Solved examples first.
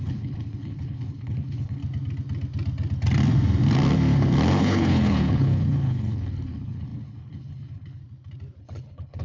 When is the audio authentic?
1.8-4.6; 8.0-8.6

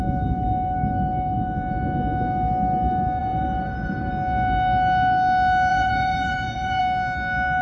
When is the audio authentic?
0.0-3.2; 4.1-5.7; 6.8-7.6

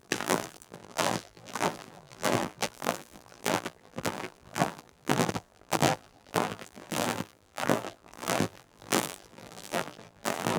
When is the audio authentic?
none

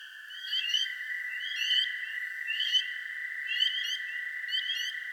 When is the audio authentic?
0.0-0.4; 1.4-2.1; 2.8-5.1

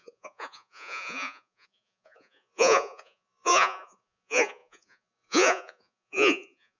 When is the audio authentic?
none

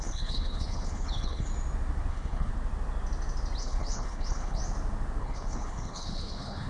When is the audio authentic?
1.5-2.1; 2.5-3.6; 4.6-5.2

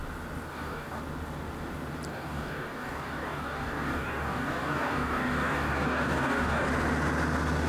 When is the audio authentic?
0.0-0.5; 1.0-2.1; 6.7-7.7

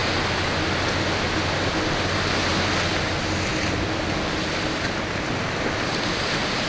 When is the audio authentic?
0.0-6.7